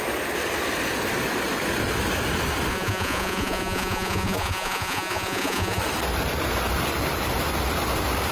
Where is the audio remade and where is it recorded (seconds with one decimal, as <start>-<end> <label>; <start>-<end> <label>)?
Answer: 0.0-2.7 recorded; 2.7-5.8 remade; 5.8-8.3 recorded